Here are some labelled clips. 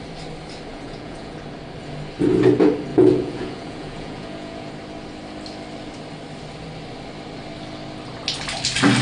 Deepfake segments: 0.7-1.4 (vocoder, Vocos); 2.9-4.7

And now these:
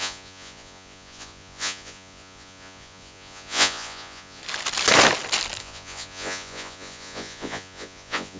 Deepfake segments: 0.0-4.4 (vocoder, Vocos); 5.6-8.4

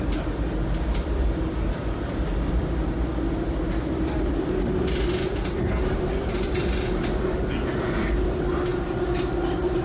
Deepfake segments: none

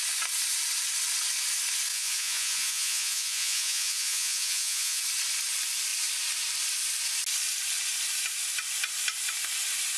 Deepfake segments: 1.9-5.0 (vocoder, Vocos)

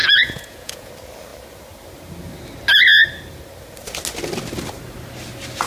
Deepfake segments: 0.0-0.9 (vocoder, Vocos)